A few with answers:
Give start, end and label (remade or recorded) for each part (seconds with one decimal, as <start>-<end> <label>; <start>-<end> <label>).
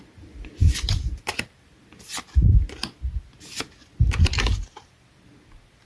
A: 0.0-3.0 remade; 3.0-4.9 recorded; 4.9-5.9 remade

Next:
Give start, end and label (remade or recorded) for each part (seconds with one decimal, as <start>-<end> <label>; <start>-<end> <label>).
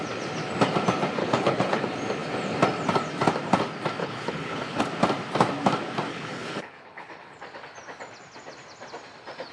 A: 0.0-1.2 recorded; 1.2-1.8 remade; 1.8-4.0 recorded; 4.0-4.8 remade; 4.8-6.1 recorded; 6.1-7.4 remade; 7.4-9.5 recorded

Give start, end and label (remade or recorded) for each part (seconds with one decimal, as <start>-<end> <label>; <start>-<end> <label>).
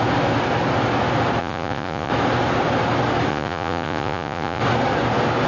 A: 0.0-1.4 recorded; 1.4-2.1 remade; 2.1-3.3 recorded; 3.3-4.6 remade; 4.6-5.5 recorded